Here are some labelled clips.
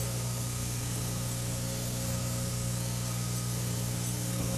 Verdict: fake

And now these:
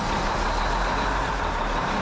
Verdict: real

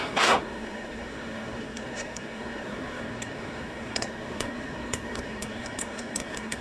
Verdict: fake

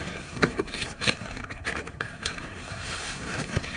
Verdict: fake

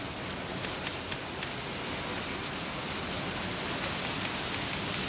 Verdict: real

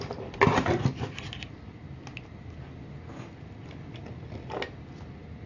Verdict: real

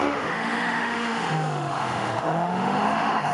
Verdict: fake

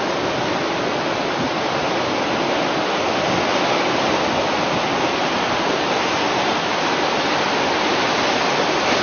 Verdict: real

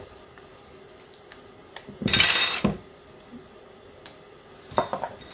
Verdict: real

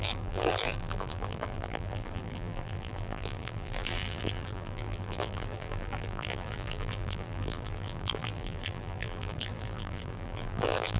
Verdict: fake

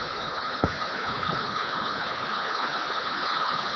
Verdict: fake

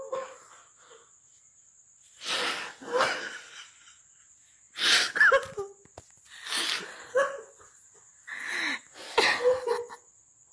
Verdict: real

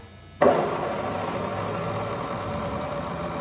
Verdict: real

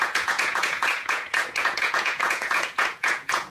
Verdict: fake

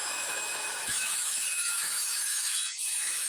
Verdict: fake